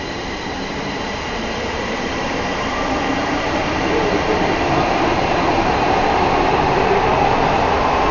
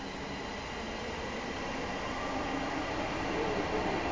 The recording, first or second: second